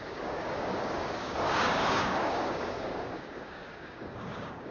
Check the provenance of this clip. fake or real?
fake